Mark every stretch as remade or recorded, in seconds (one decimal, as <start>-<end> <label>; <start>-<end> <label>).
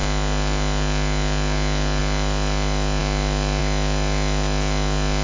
0.0-5.2 recorded